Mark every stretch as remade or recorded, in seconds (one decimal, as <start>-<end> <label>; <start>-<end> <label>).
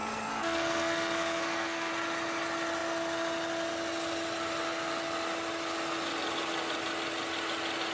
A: 0.0-1.9 remade; 1.9-7.9 recorded